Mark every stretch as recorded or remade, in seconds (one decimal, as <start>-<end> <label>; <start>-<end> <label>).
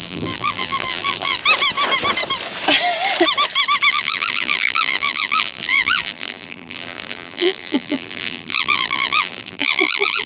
0.0-1.4 remade; 1.4-3.9 recorded; 3.9-10.3 remade